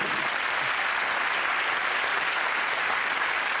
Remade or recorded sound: recorded